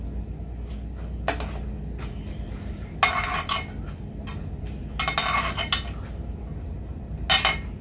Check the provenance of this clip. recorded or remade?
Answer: recorded